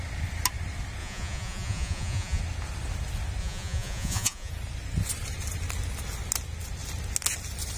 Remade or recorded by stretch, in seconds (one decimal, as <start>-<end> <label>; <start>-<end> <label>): 0.0-1.0 recorded; 1.0-2.4 remade; 2.4-3.4 recorded; 3.4-4.5 remade; 4.5-7.8 recorded